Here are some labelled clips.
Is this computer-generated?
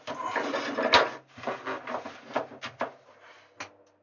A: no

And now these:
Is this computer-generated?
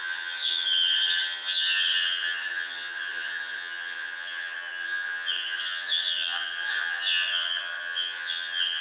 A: yes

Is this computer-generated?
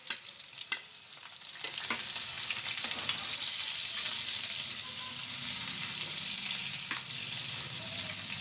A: no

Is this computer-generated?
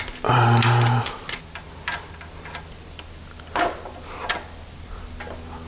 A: no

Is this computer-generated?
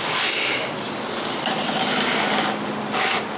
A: no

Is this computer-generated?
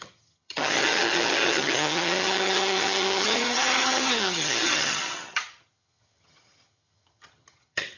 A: yes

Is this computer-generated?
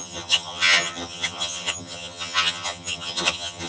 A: yes